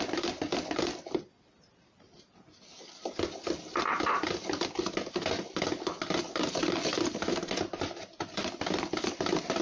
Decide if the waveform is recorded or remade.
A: recorded